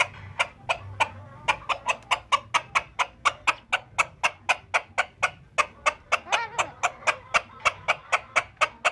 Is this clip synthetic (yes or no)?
no